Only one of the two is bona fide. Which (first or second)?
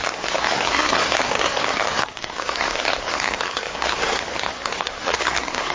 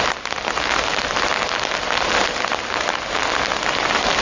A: second